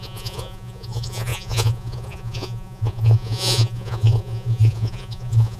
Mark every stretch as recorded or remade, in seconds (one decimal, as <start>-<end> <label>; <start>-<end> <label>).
0.0-5.6 remade